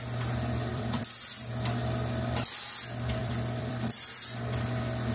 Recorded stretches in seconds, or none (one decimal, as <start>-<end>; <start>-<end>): 0.0-0.7; 1.5-3.2; 4.2-5.1